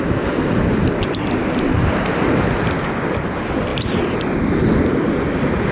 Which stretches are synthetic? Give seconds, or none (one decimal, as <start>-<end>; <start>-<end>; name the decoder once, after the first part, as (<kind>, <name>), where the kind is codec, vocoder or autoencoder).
none